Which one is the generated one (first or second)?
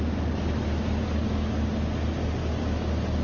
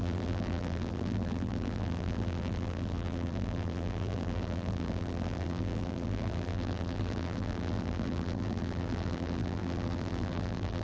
second